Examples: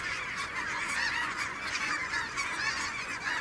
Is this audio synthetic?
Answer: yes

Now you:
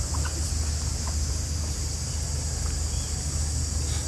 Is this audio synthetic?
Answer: no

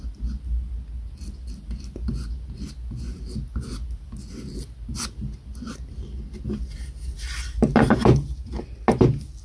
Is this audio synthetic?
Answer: no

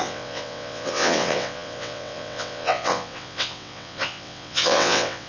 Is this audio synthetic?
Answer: yes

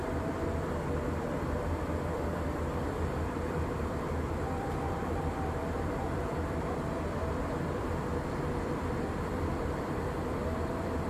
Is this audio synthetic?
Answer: yes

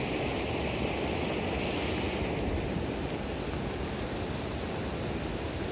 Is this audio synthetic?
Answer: no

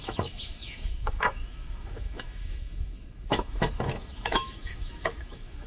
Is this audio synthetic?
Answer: yes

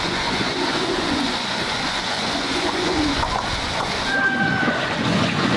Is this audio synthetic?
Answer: yes